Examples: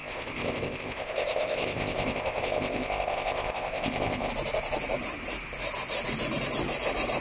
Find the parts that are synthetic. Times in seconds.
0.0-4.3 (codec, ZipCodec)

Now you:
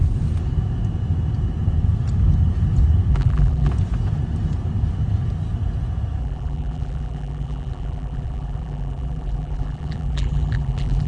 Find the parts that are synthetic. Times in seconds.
3.1-3.7 (vocoder, BigVGAN v2); 6.2-11.1

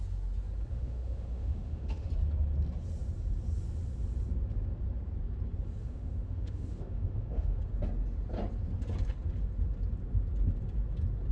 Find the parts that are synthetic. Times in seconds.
0.7-2.1 (autoencoder, DAC-VAE); 5.8-7.6

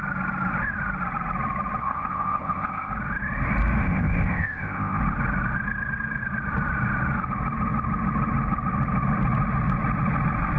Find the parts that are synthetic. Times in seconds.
1.8-2.9 (codec, ZipCodec); 3.8-5.0

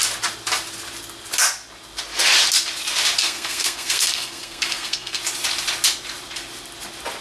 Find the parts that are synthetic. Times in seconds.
3.2-5.2 (codec, SNAC)

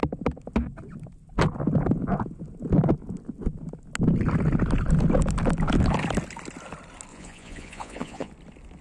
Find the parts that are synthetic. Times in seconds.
7.1-8.3 (vocoder, Vocos)

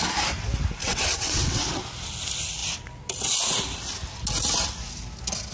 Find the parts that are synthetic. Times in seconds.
0.8-1.6 (vocoder, WaveNeXt)